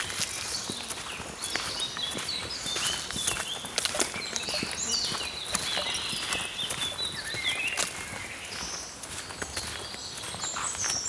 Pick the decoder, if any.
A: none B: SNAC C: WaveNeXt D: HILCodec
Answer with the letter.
A